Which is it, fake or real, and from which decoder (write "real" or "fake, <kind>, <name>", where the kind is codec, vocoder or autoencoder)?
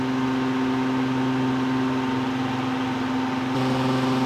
real